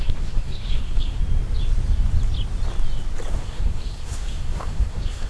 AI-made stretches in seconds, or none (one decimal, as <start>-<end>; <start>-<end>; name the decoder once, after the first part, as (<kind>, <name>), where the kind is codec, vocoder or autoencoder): 0.0-1.2 (codec, SNAC); 3.3-5.3